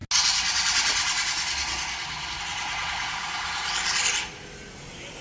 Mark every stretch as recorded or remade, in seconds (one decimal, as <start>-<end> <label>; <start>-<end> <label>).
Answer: 0.0-5.2 recorded